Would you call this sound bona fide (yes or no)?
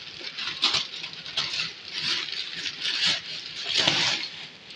no